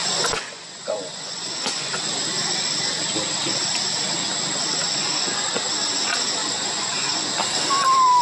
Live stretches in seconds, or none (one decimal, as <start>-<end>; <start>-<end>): 2.0-4.9; 5.6-6.4; 7.3-8.2